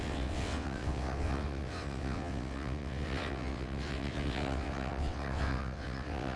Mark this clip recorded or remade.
remade